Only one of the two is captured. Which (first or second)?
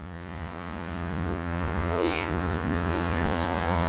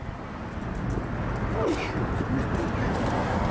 second